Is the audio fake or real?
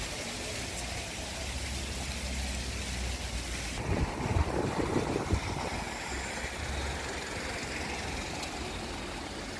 real